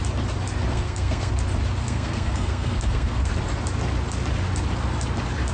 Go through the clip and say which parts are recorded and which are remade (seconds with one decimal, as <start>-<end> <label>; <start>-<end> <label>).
0.0-0.7 recorded; 0.7-1.3 remade; 1.3-1.8 recorded; 1.8-3.3 remade; 3.3-5.5 recorded